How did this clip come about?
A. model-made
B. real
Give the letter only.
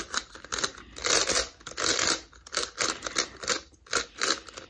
B